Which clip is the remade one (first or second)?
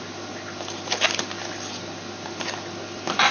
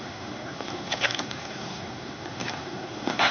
second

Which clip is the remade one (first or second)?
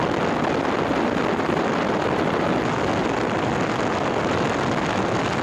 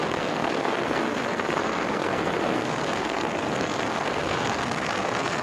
second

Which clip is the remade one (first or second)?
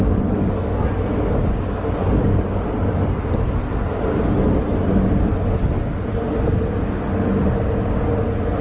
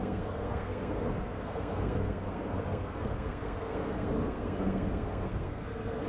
second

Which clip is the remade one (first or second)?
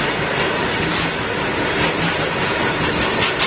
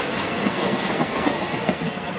second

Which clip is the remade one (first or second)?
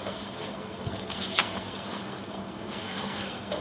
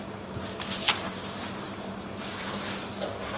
first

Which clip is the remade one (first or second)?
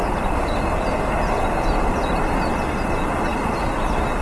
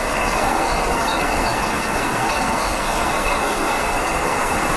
second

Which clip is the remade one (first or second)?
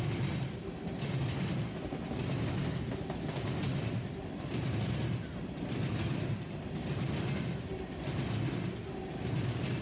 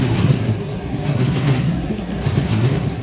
second